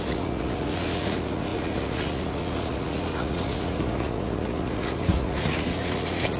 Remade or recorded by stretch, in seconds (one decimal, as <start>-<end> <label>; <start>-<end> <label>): 0.0-6.4 remade